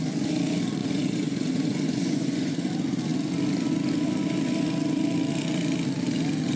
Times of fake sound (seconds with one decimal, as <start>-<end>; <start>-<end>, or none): 0.8-2.5